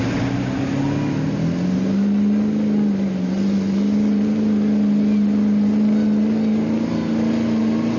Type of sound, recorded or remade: recorded